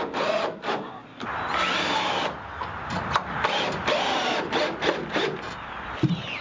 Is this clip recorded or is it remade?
recorded